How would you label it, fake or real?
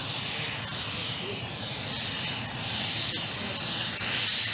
real